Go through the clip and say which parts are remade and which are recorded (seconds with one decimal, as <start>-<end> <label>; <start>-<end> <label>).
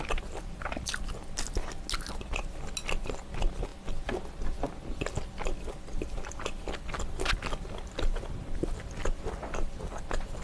0.0-10.4 recorded